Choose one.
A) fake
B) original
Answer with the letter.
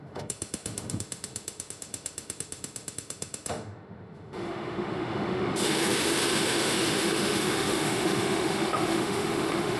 A